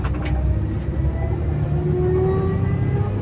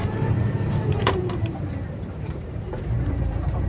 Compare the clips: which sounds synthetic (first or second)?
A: second